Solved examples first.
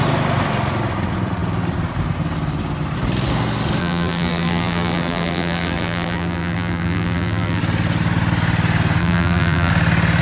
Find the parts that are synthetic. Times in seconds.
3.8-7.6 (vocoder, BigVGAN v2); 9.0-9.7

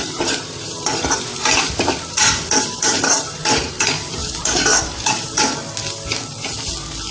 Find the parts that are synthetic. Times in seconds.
0.0-0.8 (vocoder, BigVGAN v2); 1.3-3.7; 4.2-5.6

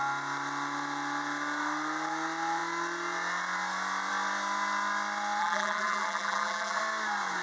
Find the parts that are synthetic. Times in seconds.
5.4-6.8 (vocoder, BigVGAN v2)

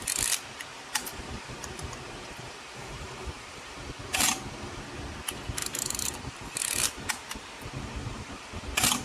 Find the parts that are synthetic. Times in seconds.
1.1-3.9 (vocoder, BigVGAN v2); 5.6-6.6; 8.0-8.5

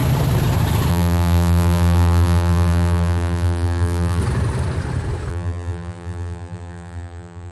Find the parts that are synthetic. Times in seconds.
0.9-4.2 (vocoder, BigVGAN v2); 5.3-7.5

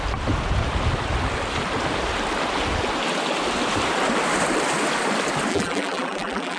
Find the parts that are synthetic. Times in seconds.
5.5-6.6 (vocoder, BigVGAN v2)

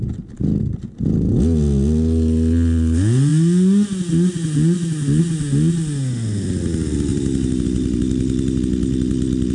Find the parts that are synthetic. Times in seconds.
7.1-9.5 (vocoder, BigVGAN v2)

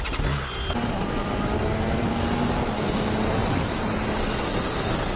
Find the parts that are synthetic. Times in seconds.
0.8-2.1 (vocoder, BigVGAN v2)